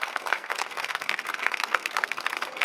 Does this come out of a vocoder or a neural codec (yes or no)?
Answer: yes